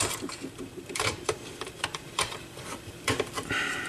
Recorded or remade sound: remade